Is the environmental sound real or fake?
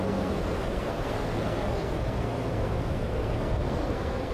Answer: fake